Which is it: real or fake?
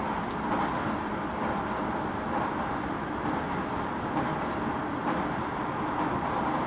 real